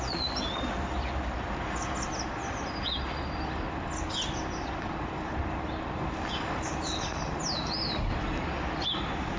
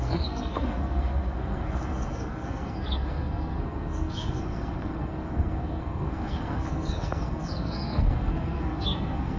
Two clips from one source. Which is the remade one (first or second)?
second